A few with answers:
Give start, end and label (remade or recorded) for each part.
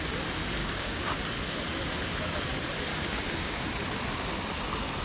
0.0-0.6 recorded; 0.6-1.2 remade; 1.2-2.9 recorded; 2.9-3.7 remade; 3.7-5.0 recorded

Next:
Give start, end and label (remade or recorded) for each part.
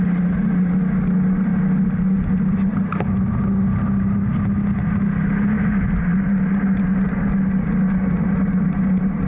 0.0-9.3 recorded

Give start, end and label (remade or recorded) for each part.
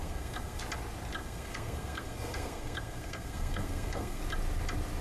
0.0-0.6 remade; 0.6-1.2 recorded; 1.2-4.2 remade; 4.2-5.0 recorded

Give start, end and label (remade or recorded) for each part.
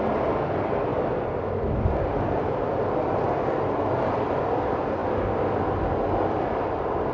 0.0-5.0 remade; 5.0-6.4 recorded; 6.4-7.1 remade